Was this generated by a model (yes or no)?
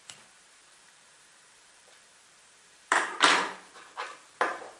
yes